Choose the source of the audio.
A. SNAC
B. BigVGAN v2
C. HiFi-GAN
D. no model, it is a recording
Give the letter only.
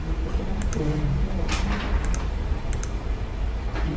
D